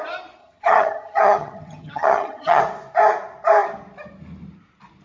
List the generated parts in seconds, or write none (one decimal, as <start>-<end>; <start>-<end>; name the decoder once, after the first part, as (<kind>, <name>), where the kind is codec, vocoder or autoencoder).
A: 0.4-2.6 (vocoder, HiFi-GAN)